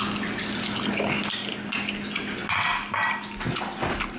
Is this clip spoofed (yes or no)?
no